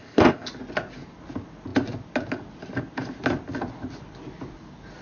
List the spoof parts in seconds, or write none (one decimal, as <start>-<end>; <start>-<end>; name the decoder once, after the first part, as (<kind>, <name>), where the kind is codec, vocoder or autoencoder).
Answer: 0.0-0.5 (codec, ZipCodec)